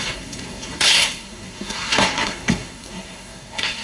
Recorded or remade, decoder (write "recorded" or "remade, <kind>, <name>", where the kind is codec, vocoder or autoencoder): remade, codec, SNAC